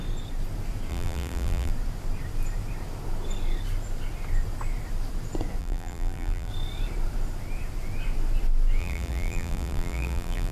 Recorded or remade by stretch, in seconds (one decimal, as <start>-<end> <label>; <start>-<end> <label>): 0.0-0.9 recorded; 0.9-1.7 remade; 1.7-5.6 recorded; 5.6-6.5 remade; 6.5-8.8 recorded; 8.8-10.5 remade